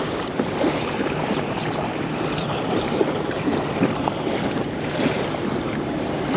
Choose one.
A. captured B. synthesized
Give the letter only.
B